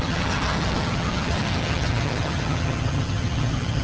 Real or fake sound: fake